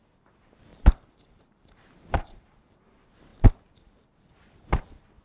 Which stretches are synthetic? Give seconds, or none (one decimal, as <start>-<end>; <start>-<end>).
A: 0.7-2.8